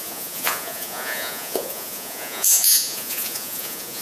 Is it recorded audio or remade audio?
remade